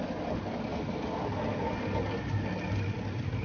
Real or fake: real